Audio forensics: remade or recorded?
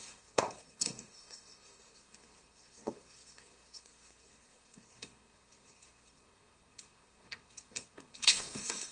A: remade